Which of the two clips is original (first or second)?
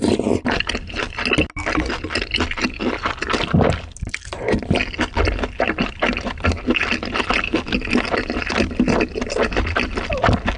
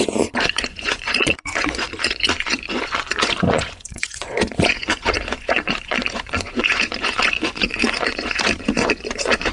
first